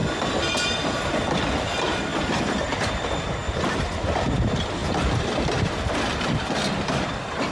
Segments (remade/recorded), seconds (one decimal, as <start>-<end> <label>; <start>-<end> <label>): 0.0-2.1 recorded; 2.1-2.9 remade; 2.9-4.8 recorded; 4.8-5.7 remade; 5.7-7.5 recorded